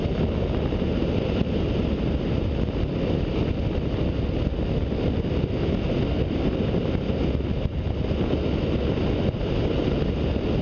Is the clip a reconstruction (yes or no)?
no